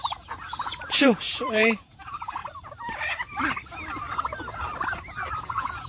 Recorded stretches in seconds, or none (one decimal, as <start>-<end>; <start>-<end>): 2.4-5.4